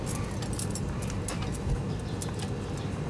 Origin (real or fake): real